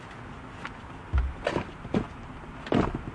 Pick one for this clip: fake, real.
real